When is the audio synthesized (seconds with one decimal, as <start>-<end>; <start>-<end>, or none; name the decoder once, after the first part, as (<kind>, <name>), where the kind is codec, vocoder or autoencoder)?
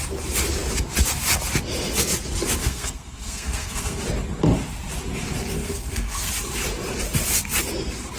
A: 2.6-4.0 (codec, SNAC); 5.6-6.3